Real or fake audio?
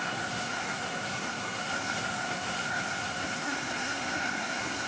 fake